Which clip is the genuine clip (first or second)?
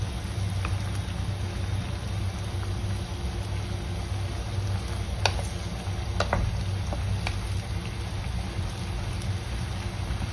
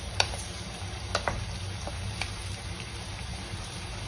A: first